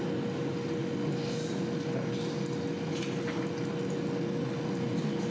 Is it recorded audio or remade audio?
recorded